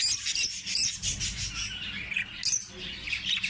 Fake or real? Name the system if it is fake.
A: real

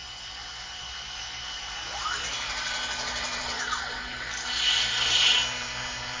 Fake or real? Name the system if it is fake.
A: fake, vocoder, BigVGAN v2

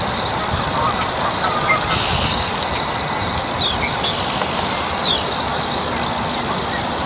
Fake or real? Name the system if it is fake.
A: real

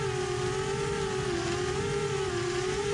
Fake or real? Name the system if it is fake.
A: real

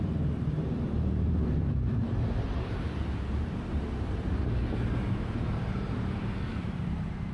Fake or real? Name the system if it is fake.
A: fake, vocoder, BigVGAN v2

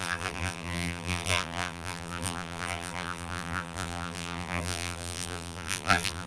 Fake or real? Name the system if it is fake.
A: fake, vocoder, BigVGAN v2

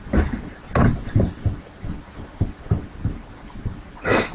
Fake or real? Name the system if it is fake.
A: real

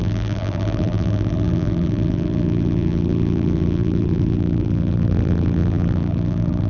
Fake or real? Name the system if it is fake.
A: fake, vocoder, BigVGAN v2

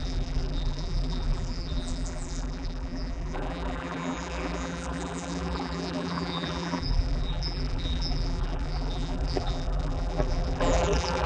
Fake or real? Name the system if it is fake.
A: fake, vocoder, BigVGAN v2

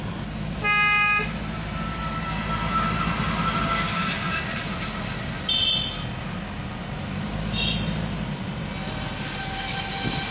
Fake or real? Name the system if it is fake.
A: real